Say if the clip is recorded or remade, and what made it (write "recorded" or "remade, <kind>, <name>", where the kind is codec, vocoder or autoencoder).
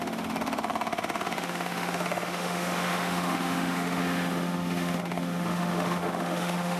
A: remade, autoencoder, DAC-VAE